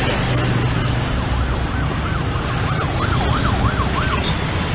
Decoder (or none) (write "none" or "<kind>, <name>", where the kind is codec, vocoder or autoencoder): none